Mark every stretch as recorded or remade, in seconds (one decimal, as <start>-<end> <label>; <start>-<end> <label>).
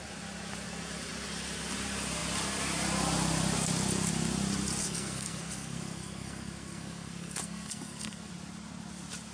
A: 0.0-4.8 recorded; 4.8-8.3 remade; 8.3-9.3 recorded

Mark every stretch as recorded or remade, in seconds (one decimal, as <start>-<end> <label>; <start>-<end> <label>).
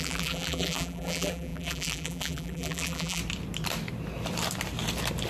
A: 0.0-3.2 remade; 3.2-5.3 recorded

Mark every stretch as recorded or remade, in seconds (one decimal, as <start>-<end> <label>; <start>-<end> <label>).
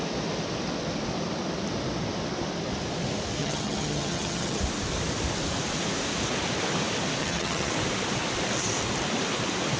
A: 0.0-3.4 recorded; 3.4-4.6 remade; 4.6-7.2 recorded; 7.2-7.7 remade; 7.7-9.8 recorded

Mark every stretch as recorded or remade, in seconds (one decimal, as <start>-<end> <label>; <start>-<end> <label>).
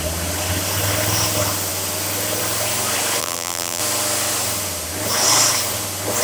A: 0.0-3.2 recorded; 3.2-3.8 remade; 3.8-6.2 recorded